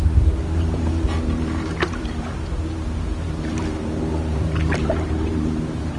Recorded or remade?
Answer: remade